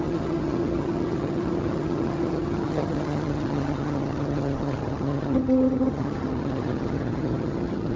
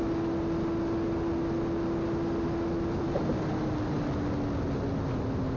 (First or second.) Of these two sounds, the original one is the second